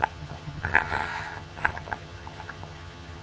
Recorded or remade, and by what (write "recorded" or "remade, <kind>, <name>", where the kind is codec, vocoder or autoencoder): remade, vocoder, HiFi-GAN